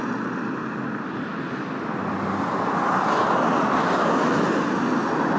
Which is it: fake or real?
real